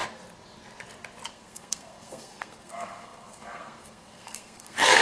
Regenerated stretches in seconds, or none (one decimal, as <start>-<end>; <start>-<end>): 1.3-5.0